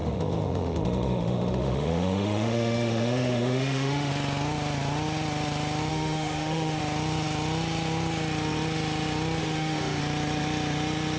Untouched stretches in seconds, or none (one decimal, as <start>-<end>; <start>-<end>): 4.1-5.9; 6.8-9.4; 10.0-11.2